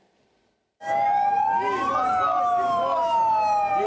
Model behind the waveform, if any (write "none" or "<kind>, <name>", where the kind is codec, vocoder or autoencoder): none